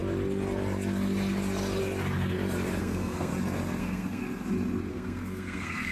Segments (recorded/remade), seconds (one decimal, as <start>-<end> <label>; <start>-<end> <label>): 0.0-2.8 recorded; 2.8-3.3 remade; 3.3-3.8 recorded; 3.8-4.2 remade; 4.2-4.9 recorded; 4.9-5.9 remade